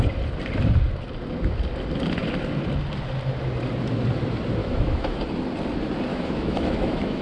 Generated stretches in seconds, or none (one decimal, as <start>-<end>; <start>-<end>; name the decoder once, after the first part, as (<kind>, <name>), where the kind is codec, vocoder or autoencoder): 4.6-5.2 (autoencoder, DAC-VAE); 6.1-7.2